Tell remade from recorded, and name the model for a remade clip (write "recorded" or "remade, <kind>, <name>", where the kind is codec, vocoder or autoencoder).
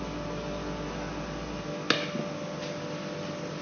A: recorded